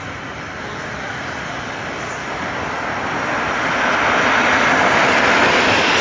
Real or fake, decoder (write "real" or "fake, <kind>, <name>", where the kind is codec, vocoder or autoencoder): real